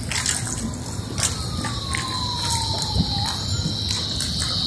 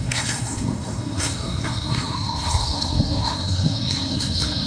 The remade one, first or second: second